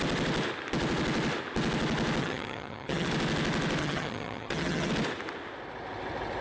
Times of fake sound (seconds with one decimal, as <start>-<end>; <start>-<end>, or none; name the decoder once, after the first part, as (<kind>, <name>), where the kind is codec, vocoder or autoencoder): 2.2-3.1 (vocoder, HiFi-GAN); 3.8-4.9